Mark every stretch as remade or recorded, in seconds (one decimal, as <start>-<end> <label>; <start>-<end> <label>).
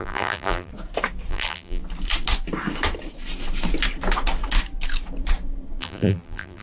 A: 0.0-0.7 remade; 0.7-1.3 recorded; 1.3-1.8 remade; 1.8-5.8 recorded; 5.8-6.6 remade